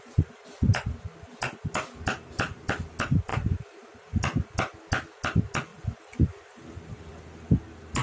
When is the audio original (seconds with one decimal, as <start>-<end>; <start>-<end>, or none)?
0.0-3.3; 3.8-5.7; 7.1-8.0